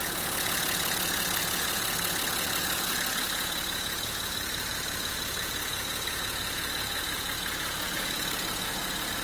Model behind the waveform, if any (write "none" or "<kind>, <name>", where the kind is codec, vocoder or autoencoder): vocoder, Vocos